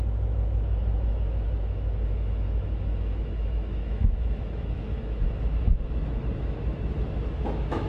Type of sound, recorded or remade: remade